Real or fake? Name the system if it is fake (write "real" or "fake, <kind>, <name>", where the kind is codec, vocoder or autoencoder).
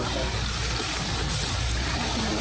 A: real